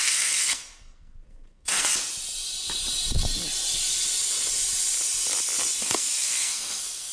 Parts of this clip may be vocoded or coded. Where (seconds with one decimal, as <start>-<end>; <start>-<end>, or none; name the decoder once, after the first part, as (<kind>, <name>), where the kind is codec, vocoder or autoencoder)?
0.0-1.9 (codec, SNAC); 5.8-7.1